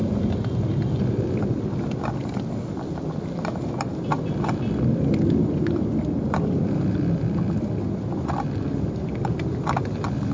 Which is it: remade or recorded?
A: recorded